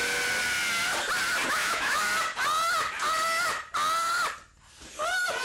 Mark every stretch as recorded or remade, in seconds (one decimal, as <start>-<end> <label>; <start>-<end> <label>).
0.0-1.5 recorded; 1.5-2.1 remade; 2.1-5.4 recorded